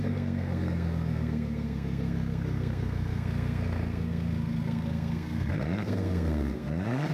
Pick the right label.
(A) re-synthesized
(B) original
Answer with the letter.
A